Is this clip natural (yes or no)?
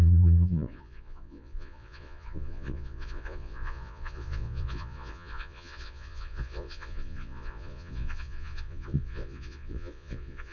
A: no